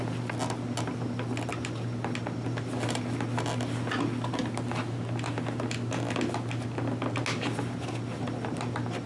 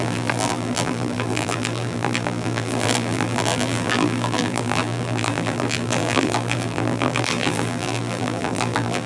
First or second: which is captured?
first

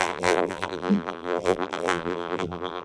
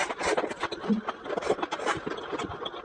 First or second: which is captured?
second